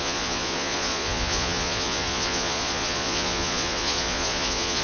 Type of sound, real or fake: fake